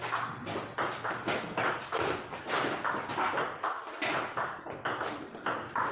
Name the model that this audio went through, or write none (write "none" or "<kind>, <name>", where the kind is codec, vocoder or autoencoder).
none